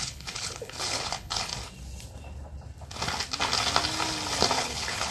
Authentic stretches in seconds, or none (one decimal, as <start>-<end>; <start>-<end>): 1.5-4.6